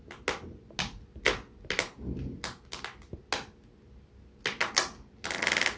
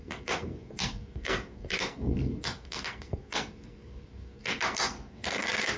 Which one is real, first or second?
first